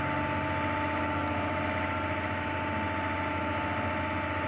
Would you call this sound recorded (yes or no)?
yes